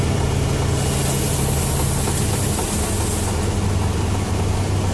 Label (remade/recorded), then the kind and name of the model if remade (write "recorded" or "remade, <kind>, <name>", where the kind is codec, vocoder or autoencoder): recorded